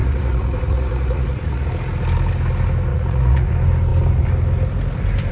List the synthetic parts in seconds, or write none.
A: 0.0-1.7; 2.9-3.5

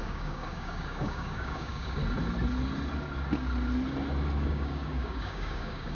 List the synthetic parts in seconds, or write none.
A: 0.0-2.0; 4.4-5.9

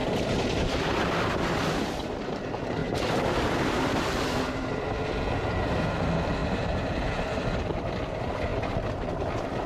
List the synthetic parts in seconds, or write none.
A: 0.6-2.8; 5.9-8.5